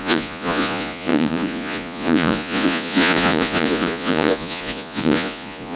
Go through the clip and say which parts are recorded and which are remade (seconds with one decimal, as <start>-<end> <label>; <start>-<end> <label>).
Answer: 0.0-5.8 remade